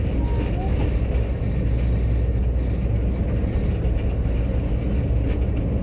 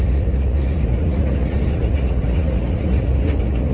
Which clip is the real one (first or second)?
first